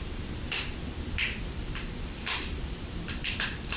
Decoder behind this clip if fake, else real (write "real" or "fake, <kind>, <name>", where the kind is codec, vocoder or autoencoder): fake, vocoder, BigVGAN v2